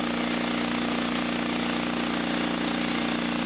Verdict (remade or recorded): recorded